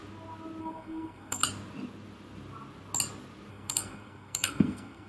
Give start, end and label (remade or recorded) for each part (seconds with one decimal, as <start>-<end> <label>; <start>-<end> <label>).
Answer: 0.0-0.6 recorded; 0.6-1.4 remade; 1.4-3.5 recorded; 3.5-5.1 remade